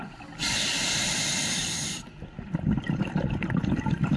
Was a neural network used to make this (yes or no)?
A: no